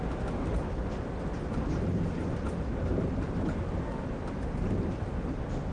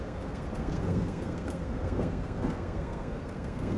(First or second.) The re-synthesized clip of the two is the second